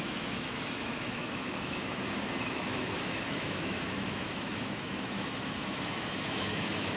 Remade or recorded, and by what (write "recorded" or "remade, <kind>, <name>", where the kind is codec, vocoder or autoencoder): remade, autoencoder, DAC-VAE